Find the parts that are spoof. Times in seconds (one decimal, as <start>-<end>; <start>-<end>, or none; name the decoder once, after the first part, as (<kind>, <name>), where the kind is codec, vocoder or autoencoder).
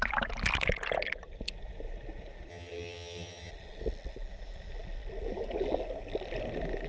2.5-3.5 (vocoder, HiFi-GAN)